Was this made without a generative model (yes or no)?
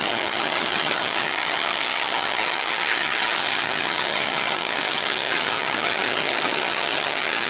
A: no